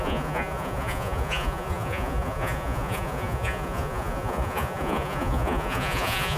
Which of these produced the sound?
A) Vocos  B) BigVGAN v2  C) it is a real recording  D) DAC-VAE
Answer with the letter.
A